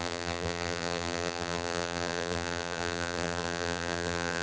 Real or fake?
fake